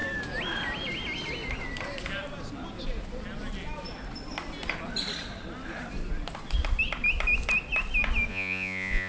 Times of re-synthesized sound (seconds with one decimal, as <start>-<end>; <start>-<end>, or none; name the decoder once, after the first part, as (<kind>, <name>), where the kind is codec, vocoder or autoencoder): 8.3-9.1 (vocoder, Vocos)